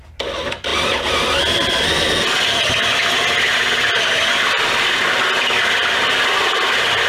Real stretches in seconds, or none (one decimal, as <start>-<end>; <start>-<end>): 0.0-7.1